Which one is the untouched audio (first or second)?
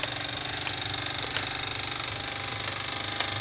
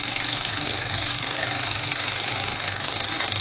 first